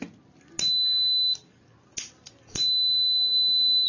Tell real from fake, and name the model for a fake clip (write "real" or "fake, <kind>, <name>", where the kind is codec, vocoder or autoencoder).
real